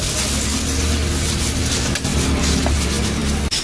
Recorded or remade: recorded